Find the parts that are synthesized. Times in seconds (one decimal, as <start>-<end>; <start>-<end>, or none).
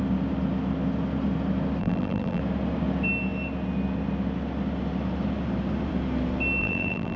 1.8-2.4; 6.6-7.2